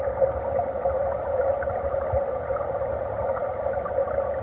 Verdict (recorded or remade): recorded